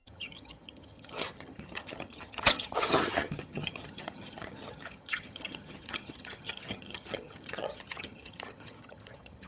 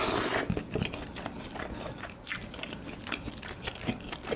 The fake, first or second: first